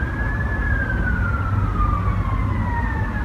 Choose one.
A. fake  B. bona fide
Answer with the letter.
B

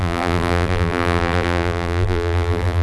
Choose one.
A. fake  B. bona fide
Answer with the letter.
A